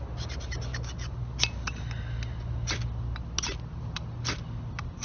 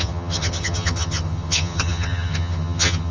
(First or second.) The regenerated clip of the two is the second